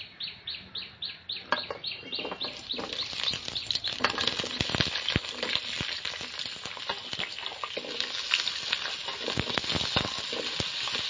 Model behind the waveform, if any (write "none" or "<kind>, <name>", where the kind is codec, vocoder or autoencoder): none